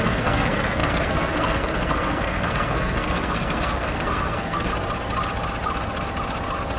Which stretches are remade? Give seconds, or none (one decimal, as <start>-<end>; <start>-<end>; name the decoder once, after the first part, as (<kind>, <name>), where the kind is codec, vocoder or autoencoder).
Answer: 0.0-4.7 (codec, SNAC)